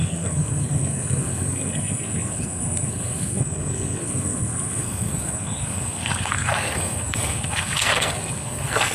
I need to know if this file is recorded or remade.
remade